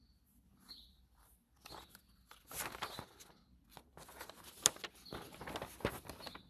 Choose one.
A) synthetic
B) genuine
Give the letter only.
B